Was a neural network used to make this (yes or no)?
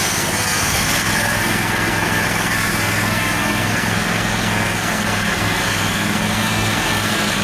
yes